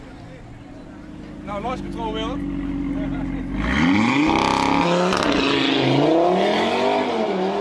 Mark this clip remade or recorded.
recorded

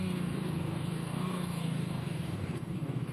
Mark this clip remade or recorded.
remade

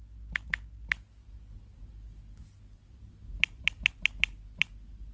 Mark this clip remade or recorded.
recorded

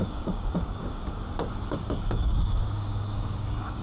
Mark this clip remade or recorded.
remade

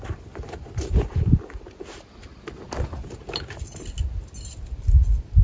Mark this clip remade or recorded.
recorded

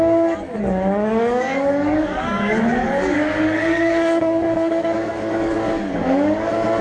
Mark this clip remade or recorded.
remade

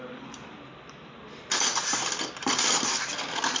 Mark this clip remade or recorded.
recorded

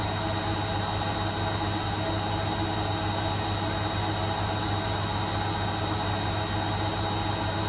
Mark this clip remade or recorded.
recorded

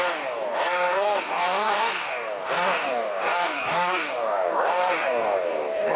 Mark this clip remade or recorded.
remade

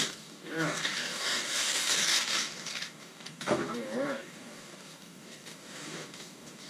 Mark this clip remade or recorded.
remade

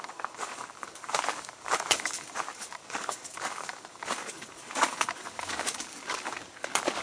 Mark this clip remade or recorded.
remade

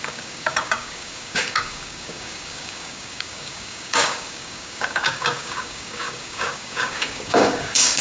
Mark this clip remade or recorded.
remade